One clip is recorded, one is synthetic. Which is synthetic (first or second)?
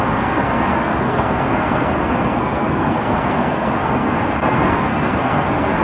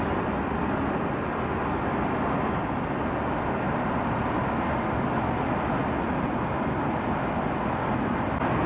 first